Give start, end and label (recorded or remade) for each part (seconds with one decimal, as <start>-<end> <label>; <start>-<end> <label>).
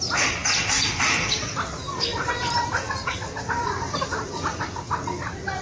0.0-2.1 recorded; 2.1-4.6 remade; 4.6-5.6 recorded